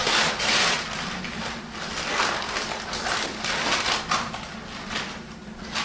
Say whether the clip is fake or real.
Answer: real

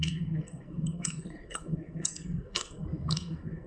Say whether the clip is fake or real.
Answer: fake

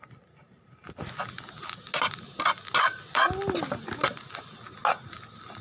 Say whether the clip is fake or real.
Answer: real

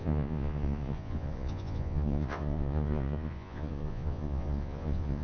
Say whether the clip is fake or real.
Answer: fake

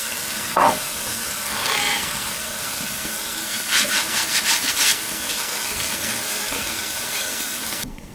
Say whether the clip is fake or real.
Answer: fake